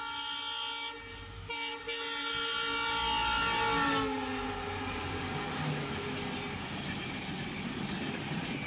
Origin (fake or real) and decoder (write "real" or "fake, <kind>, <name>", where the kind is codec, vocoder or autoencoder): real